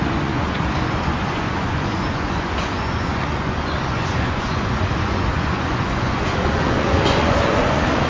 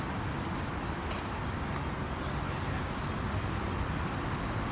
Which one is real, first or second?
second